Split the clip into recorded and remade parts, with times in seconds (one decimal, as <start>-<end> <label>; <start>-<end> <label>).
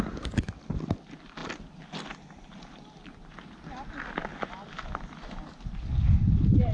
0.0-6.7 recorded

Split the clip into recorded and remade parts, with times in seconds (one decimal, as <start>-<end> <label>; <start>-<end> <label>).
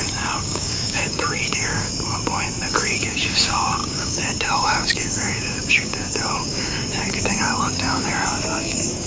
0.0-1.9 remade; 1.9-2.8 recorded; 2.8-8.1 remade; 8.1-8.6 recorded; 8.6-9.1 remade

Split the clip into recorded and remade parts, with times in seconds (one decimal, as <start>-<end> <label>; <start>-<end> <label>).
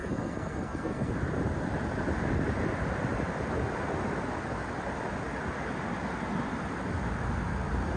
0.0-1.1 remade; 1.1-8.0 recorded